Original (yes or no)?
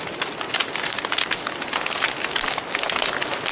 yes